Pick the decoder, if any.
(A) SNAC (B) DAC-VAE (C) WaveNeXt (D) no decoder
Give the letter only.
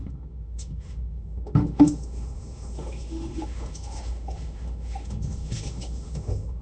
B